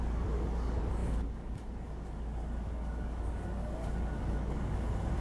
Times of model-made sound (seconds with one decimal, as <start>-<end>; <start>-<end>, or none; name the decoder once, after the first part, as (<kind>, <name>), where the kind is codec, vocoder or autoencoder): 0.0-5.2 (codec, DAC)